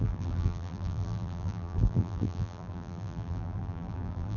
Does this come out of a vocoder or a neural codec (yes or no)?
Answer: yes